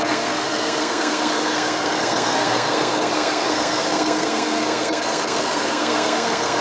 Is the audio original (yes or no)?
no